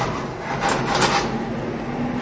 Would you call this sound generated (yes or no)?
no